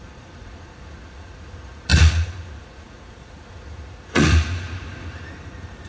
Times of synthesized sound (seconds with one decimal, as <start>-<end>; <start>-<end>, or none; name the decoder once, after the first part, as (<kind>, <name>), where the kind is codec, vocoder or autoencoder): 0.0-5.9 (vocoder, Vocos)